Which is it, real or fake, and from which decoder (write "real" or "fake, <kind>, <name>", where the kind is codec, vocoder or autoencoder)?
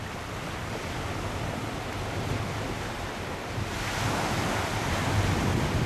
real